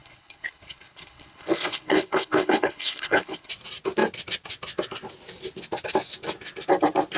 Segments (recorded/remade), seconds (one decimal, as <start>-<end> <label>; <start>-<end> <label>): 0.0-3.5 remade; 3.5-7.2 recorded

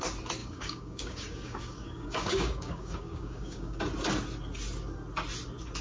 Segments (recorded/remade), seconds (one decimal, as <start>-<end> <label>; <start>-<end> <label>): 0.0-0.4 recorded; 0.4-3.8 remade; 3.8-5.8 recorded

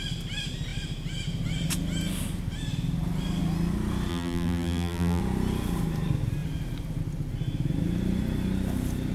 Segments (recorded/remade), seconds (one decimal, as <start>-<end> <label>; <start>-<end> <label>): 0.0-4.1 recorded; 4.1-5.2 remade; 5.2-9.1 recorded

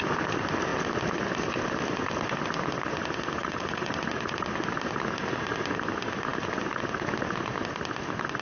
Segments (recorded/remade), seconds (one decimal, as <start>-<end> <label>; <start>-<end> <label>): 0.0-3.4 recorded; 3.4-3.9 remade; 3.9-8.4 recorded

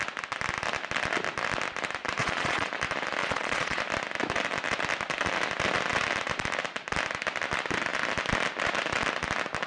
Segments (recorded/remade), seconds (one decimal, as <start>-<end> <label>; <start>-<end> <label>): 0.0-2.2 recorded; 2.2-2.7 remade; 2.7-3.2 recorded; 3.2-3.8 remade; 3.8-9.7 recorded

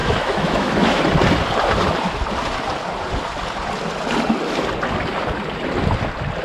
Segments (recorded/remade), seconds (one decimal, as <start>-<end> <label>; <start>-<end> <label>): 0.0-1.0 remade; 1.0-6.4 recorded